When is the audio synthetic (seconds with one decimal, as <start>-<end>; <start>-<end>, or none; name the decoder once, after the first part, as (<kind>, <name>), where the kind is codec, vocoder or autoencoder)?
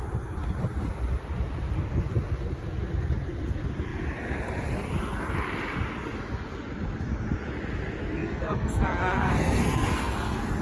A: 8.2-10.6 (codec, SNAC)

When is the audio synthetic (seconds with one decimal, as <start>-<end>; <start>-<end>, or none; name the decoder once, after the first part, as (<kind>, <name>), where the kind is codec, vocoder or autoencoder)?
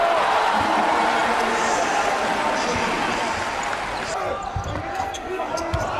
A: 4.9-5.5 (codec, SNAC)